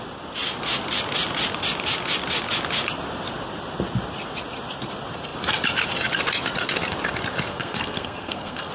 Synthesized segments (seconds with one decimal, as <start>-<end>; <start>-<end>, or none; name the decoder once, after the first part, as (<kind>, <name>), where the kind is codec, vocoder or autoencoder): 7.5-8.7 (codec, SNAC)